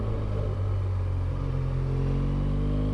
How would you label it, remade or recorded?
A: recorded